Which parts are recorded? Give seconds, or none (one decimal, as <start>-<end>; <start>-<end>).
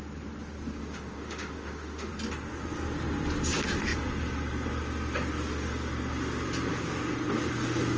0.0-0.8; 2.1-8.0